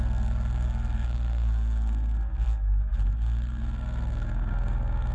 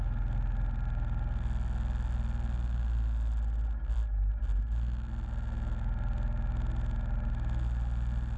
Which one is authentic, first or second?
second